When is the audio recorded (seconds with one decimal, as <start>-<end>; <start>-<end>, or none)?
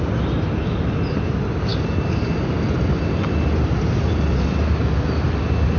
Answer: 0.0-5.8